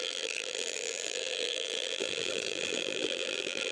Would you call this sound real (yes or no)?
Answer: no